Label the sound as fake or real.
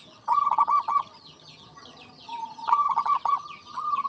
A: fake